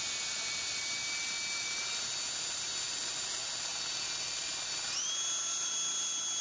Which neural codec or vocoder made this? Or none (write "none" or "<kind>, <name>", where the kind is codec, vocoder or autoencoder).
none